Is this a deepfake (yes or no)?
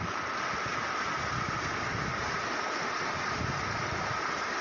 no